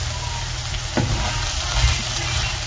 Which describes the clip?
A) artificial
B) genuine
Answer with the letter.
B